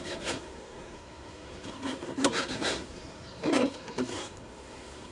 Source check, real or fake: fake